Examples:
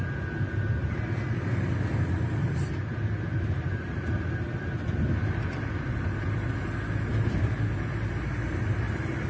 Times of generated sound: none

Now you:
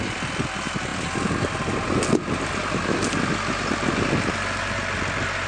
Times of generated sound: none

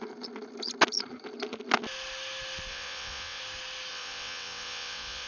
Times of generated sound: 2.7-3.4; 3.9-5.3

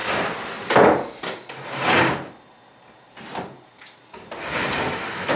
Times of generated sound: none

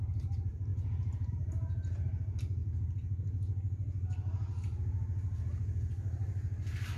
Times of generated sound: 0.0-2.6

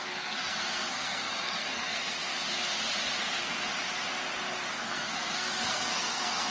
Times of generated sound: 0.0-2.4; 3.2-3.7; 4.7-6.5

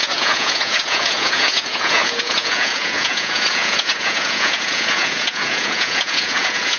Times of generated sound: 0.0-6.8

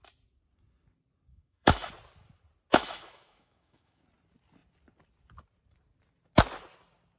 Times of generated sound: 1.3-1.9; 2.7-4.0